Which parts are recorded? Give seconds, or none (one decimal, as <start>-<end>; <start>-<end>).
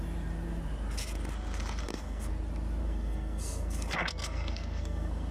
0.0-1.8; 2.3-2.8